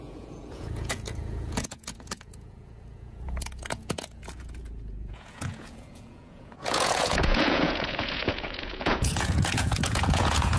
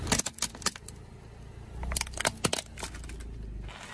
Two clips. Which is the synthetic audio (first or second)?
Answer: first